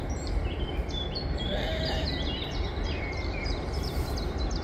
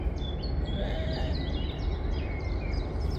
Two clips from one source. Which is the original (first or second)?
second